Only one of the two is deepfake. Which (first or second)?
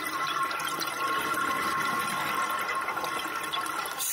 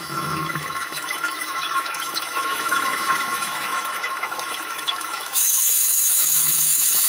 second